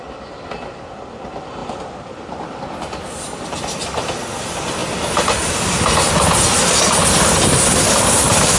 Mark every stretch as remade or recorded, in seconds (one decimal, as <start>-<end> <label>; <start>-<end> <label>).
0.0-1.6 recorded; 1.6-2.6 remade; 2.6-8.6 recorded